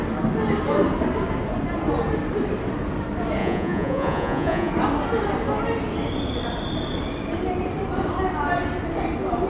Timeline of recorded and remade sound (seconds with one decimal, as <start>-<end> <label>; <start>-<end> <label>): 0.0-3.4 recorded; 3.4-4.7 remade; 4.7-9.5 recorded